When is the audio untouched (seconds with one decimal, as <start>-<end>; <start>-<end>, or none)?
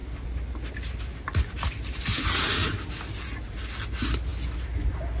0.0-5.2